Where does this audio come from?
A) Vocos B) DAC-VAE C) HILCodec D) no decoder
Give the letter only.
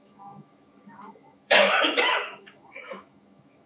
B